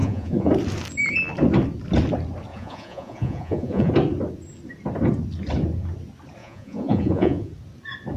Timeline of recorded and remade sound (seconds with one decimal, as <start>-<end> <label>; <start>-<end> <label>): 0.0-0.5 remade; 0.5-2.5 recorded; 2.5-3.9 remade; 3.9-6.4 recorded; 6.4-7.5 remade; 7.5-8.2 recorded